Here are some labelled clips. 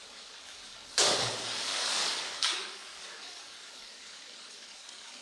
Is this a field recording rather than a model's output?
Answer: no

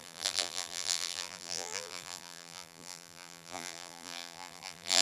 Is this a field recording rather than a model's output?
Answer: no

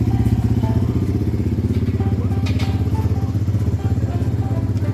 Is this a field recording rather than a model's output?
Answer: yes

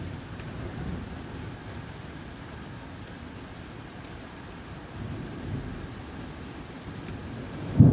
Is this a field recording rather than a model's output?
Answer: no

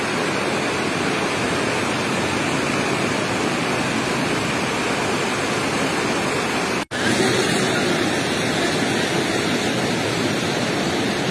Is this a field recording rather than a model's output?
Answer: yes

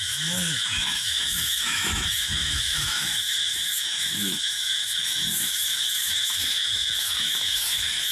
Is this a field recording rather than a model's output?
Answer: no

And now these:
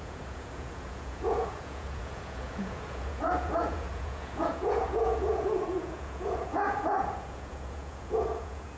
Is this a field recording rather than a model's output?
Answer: no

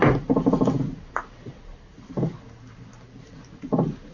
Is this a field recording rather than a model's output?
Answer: yes